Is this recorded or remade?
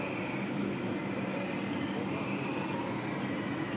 recorded